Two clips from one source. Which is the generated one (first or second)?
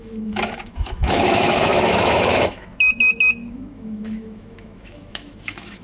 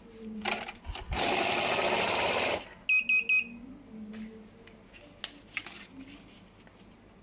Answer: first